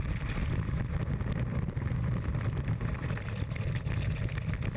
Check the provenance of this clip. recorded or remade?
recorded